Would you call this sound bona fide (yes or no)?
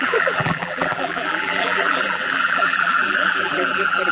no